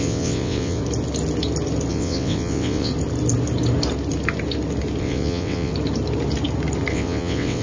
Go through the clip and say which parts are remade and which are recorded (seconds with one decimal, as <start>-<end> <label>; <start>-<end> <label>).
0.0-0.8 remade; 0.8-1.9 recorded; 1.9-2.9 remade; 2.9-5.0 recorded; 5.0-5.7 remade; 5.7-6.9 recorded; 6.9-7.6 remade